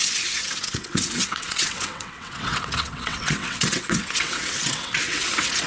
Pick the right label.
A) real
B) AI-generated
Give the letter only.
B